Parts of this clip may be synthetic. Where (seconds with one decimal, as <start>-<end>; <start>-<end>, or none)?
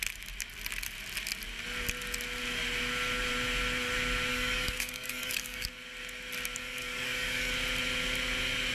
4.3-5.7; 6.6-7.5